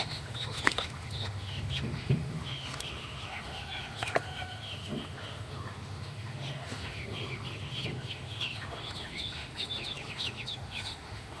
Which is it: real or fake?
fake